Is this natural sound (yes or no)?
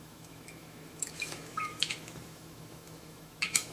no